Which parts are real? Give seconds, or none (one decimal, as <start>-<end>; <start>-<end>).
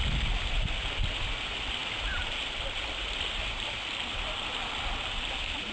0.0-5.7